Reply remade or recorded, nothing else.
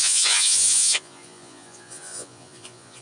remade